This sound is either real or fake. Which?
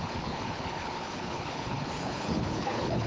fake